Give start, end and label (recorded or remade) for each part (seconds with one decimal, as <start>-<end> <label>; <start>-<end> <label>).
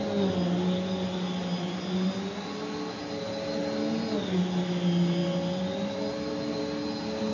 0.0-7.3 recorded